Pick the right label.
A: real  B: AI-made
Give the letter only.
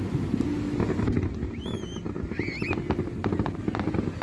A